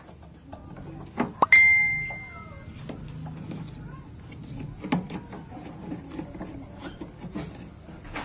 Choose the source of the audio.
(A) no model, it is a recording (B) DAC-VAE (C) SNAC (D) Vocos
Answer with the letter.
A